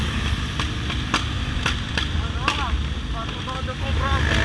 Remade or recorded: recorded